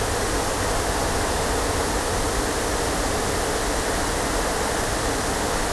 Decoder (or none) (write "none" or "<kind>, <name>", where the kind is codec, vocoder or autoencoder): none